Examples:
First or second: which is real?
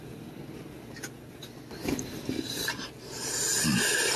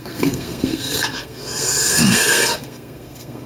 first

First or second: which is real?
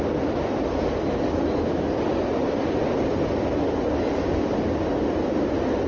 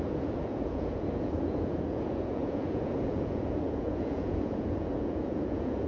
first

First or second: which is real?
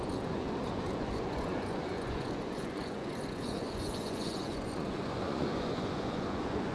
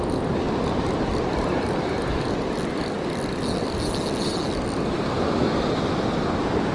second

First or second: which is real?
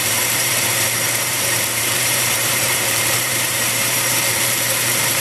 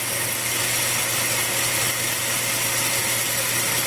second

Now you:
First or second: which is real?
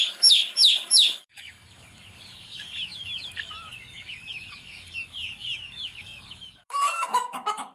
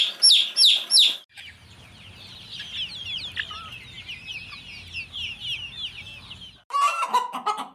second